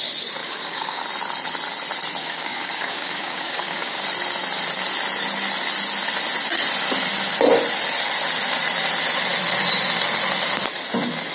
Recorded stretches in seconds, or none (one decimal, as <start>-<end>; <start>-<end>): 0.0-0.4; 1.0-2.2; 4.0-11.3